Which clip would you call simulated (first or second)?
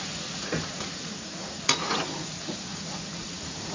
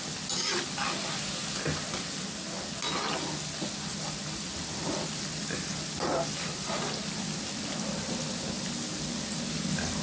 first